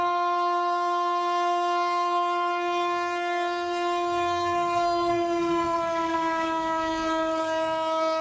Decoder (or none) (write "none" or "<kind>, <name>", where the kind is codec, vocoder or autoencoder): codec, SNAC